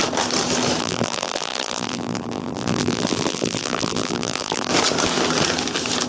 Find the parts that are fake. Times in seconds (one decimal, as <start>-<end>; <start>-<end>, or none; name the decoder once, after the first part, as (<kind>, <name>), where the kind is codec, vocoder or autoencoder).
0.8-4.7 (vocoder, BigVGAN v2)